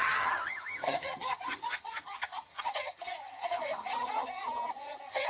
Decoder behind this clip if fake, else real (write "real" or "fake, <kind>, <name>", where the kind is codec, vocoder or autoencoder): fake, vocoder, HiFi-GAN